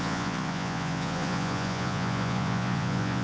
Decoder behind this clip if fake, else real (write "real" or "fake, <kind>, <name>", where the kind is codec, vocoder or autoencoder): fake, vocoder, Vocos